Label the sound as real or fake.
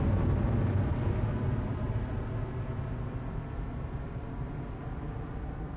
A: real